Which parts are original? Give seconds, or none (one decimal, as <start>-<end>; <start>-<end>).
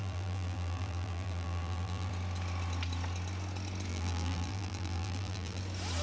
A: 2.1-3.9; 5.6-6.0